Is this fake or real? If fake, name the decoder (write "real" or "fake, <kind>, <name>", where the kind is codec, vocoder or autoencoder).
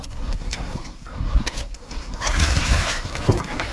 fake, codec, SNAC